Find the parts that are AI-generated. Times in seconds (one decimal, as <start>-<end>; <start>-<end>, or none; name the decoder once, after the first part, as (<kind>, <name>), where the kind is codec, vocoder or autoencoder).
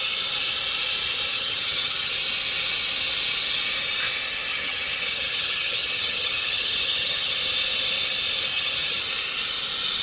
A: 1.3-2.1 (vocoder, HiFi-GAN); 4.5-7.3; 8.5-9.1